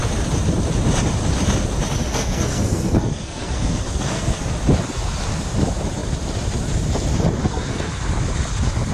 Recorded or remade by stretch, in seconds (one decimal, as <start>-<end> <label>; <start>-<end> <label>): 0.0-2.1 recorded; 2.1-4.5 remade; 4.5-7.4 recorded; 7.4-8.0 remade; 8.0-8.9 recorded